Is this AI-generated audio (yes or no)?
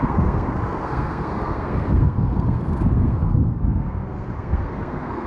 yes